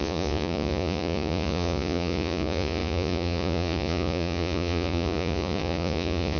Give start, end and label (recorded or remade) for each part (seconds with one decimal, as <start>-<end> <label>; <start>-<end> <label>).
0.0-6.4 remade